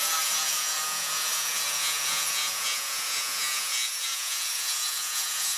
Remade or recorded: remade